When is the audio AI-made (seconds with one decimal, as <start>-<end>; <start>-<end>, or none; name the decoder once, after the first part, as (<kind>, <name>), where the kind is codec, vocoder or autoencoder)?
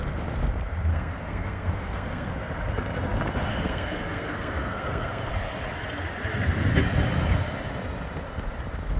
0.9-2.3 (codec, SNAC); 3.5-5.3